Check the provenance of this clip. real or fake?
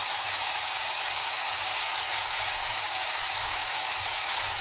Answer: fake